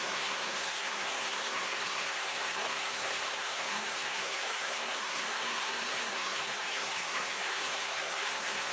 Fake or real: fake